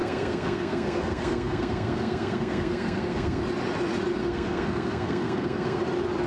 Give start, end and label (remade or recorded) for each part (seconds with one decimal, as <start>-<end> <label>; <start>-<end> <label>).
0.0-3.4 remade; 3.4-4.2 recorded; 4.2-5.8 remade; 5.8-6.3 recorded